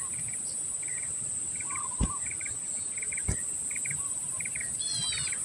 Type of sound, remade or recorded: recorded